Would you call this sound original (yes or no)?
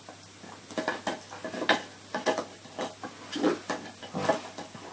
yes